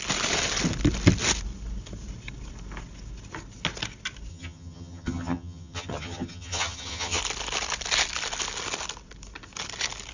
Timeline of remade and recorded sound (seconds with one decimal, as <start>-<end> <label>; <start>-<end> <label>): 0.0-4.3 recorded; 4.3-7.2 remade; 7.2-10.1 recorded